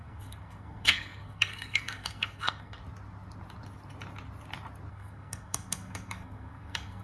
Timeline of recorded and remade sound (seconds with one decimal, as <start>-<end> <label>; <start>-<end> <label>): 0.0-2.8 remade; 2.8-4.9 recorded; 4.9-7.0 remade